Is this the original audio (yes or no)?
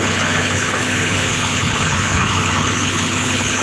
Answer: no